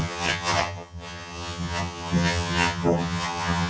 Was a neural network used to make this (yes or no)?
yes